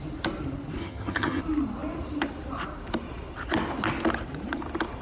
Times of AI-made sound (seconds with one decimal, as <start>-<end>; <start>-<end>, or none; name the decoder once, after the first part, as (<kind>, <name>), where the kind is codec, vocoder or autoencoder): 0.8-1.4 (vocoder, HiFi-GAN)